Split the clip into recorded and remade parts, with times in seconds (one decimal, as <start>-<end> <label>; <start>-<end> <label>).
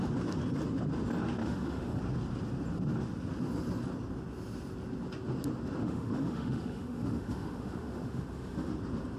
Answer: 0.0-1.4 recorded; 1.4-2.0 remade; 2.0-5.8 recorded; 5.8-8.7 remade; 8.7-9.2 recorded